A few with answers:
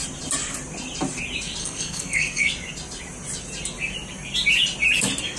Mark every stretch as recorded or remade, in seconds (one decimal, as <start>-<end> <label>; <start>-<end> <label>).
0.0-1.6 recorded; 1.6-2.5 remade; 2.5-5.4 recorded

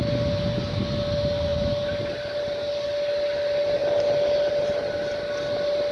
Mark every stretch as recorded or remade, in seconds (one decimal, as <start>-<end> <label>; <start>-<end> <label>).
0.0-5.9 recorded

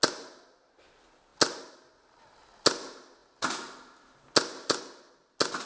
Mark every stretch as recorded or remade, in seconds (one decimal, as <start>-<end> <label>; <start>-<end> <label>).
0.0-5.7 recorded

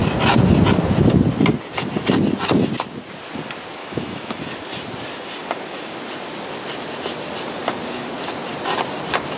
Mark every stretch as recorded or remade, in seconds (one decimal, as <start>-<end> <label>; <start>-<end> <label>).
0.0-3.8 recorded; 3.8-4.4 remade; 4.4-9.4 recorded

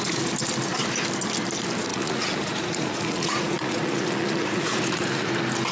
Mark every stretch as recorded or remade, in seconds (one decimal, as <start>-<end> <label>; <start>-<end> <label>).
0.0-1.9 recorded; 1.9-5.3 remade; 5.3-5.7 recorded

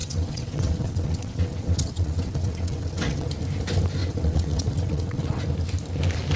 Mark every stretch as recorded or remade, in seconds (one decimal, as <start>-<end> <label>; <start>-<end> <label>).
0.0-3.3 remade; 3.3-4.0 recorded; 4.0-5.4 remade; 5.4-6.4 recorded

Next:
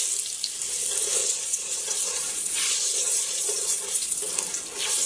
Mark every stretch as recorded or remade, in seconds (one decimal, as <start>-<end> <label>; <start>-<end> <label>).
0.0-1.2 recorded; 1.2-4.3 remade; 4.3-5.1 recorded